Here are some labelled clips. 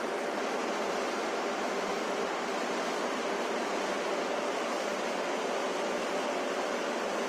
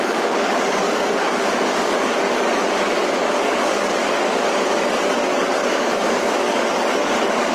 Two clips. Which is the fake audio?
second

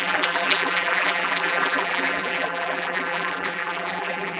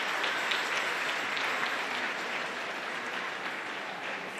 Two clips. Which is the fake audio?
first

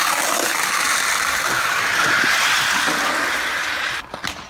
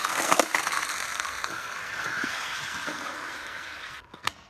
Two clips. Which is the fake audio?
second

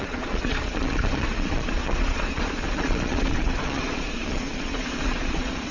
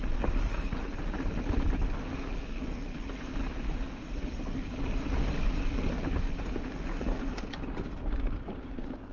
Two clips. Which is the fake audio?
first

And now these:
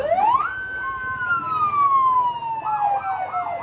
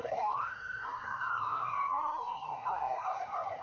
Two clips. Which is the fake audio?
second